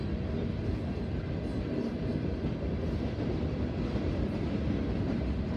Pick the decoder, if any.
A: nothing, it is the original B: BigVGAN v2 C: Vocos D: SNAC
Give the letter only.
A